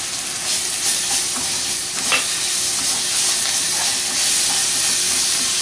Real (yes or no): yes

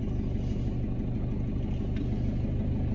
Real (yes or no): yes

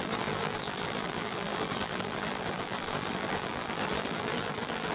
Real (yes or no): no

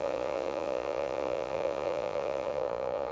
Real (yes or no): no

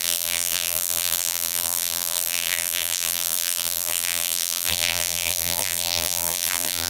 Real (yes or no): no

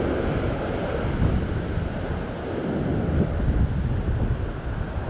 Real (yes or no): yes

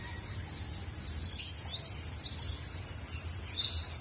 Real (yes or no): yes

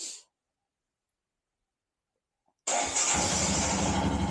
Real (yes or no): yes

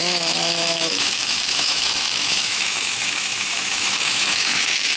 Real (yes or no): no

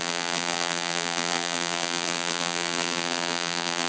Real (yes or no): no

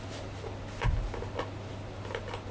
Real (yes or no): yes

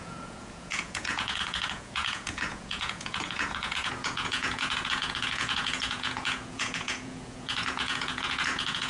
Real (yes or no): no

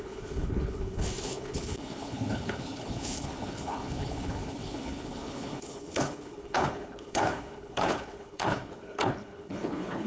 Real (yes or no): no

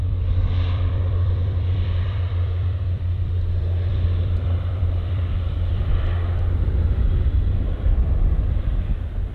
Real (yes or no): no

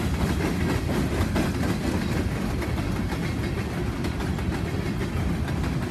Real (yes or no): yes